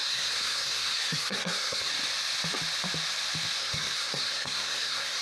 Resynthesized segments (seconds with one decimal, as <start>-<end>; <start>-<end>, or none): 0.0-1.9; 3.6-5.2